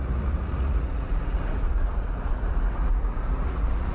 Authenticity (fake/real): fake